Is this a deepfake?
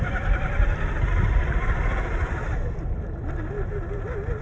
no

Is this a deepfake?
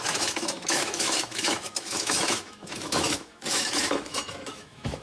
yes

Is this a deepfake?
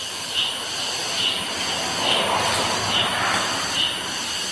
no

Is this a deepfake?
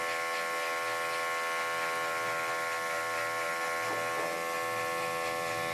no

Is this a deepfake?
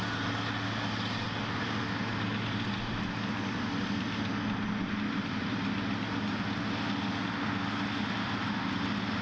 no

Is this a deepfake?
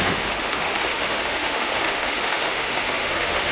yes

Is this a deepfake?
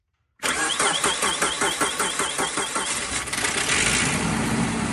no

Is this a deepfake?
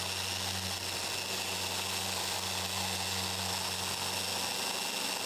no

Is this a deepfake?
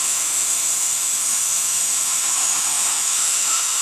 yes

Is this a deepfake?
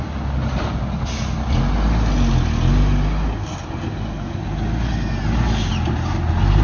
no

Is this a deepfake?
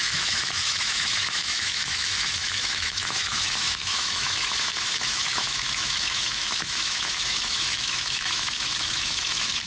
yes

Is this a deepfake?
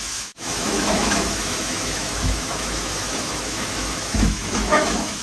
yes